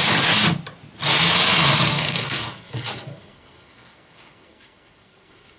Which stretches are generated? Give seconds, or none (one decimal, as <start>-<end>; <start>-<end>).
1.9-5.6